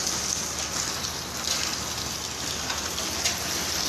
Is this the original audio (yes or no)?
yes